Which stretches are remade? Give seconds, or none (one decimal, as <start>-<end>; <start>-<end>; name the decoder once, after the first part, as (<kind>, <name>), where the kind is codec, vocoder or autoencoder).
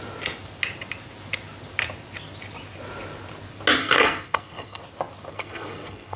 3.8-4.8 (codec, SNAC); 5.3-6.2